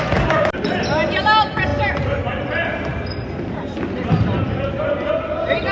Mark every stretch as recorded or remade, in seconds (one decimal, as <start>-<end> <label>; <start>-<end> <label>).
0.0-5.7 recorded